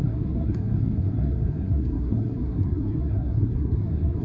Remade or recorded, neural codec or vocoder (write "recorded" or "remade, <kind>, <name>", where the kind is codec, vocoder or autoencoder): remade, codec, SNAC